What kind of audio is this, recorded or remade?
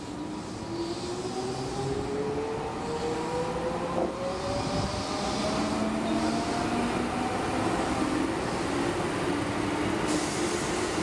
recorded